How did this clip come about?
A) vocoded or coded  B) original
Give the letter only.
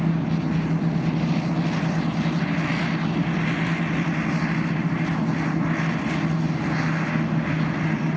B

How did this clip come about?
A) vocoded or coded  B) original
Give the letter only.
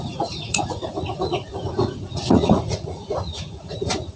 A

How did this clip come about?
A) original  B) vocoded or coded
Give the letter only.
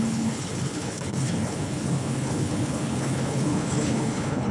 B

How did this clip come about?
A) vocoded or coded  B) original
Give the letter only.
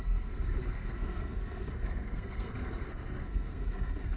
A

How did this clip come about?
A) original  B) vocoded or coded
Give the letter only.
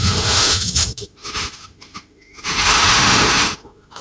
B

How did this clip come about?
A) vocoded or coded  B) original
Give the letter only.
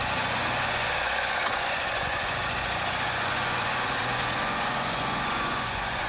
A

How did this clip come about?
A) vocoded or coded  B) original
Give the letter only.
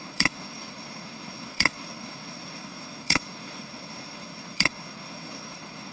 A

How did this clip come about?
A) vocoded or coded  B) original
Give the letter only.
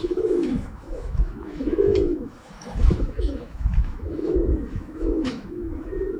A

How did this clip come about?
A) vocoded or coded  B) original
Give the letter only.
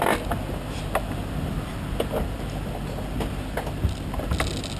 B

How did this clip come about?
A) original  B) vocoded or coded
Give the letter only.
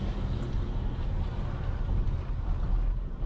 A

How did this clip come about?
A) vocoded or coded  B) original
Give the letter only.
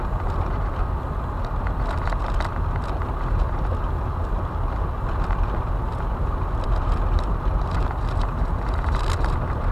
B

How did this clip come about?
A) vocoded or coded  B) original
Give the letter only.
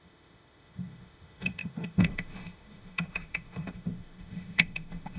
A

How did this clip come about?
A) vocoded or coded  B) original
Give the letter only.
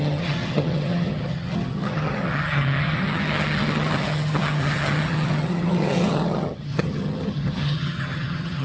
A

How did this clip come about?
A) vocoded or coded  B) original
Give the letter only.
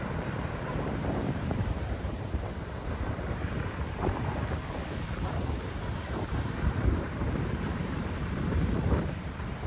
A